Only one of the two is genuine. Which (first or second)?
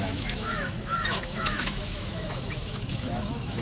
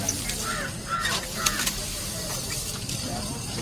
second